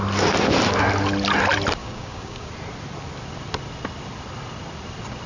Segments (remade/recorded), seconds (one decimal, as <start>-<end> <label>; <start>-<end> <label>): 0.0-1.8 recorded; 1.8-2.5 remade; 2.5-5.3 recorded

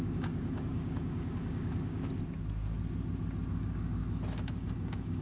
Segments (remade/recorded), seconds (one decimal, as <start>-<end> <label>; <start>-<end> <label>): 0.0-2.1 remade; 2.1-3.5 recorded; 3.5-4.0 remade; 4.0-4.5 recorded; 4.5-5.2 remade

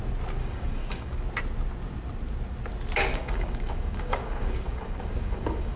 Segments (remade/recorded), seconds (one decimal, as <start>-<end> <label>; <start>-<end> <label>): 0.0-0.4 recorded; 0.4-1.3 remade; 1.3-3.1 recorded; 3.1-5.8 remade

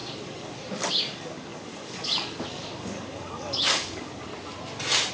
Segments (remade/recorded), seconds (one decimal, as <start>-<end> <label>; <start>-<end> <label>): 0.0-4.3 remade; 4.3-5.1 recorded

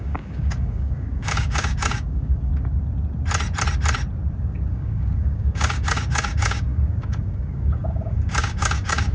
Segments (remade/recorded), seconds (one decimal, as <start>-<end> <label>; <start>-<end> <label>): 0.0-2.5 remade; 2.5-4.7 recorded; 4.7-9.1 remade